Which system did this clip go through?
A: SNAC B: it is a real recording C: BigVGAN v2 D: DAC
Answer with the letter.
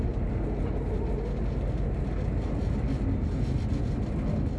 B